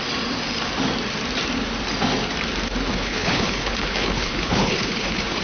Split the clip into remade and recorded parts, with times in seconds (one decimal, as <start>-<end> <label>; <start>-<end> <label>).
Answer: 0.0-2.9 recorded; 2.9-5.4 remade